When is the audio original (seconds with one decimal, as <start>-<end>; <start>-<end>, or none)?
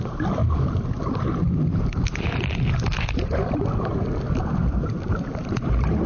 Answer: none